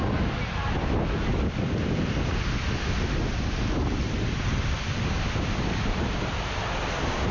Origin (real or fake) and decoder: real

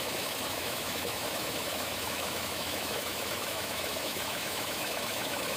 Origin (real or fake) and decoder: fake, autoencoder, DAC-VAE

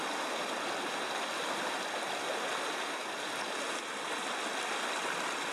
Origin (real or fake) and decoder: real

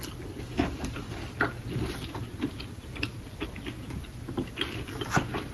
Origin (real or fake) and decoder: real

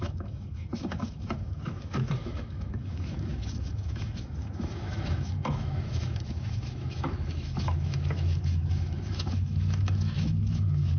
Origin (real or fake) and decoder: fake, autoencoder, DAC-VAE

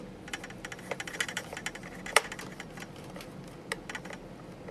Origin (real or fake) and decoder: real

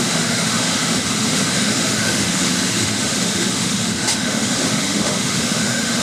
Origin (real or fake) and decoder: fake, autoencoder, DAC-VAE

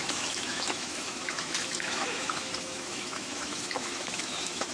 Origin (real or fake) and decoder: fake, autoencoder, DAC-VAE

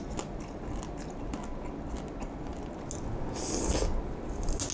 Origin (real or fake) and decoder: real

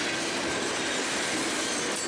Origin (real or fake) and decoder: real